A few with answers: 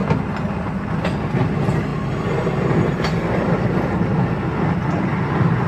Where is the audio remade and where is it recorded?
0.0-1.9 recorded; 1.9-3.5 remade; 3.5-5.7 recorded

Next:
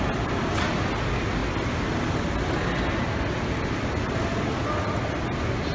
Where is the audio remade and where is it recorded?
0.0-5.7 recorded

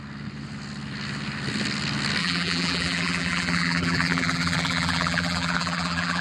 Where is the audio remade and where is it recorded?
0.0-2.2 recorded; 2.2-6.2 remade

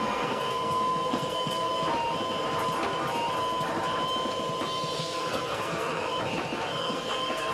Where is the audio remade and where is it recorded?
0.0-1.7 remade; 1.7-5.0 recorded; 5.0-6.1 remade; 6.1-6.8 recorded; 6.8-7.5 remade